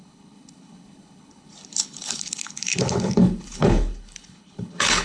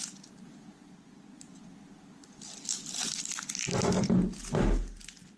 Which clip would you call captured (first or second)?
second